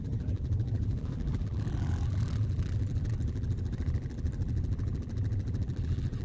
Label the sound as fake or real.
fake